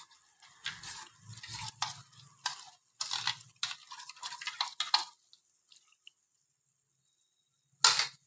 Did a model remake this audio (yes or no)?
no